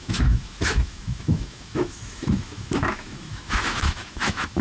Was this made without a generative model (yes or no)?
no